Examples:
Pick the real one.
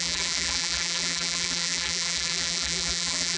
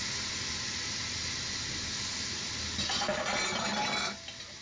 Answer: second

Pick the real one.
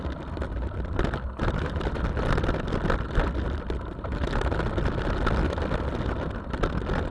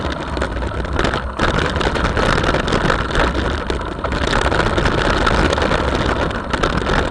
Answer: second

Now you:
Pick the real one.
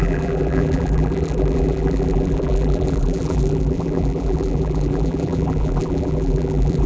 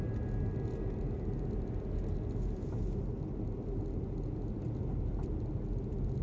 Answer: second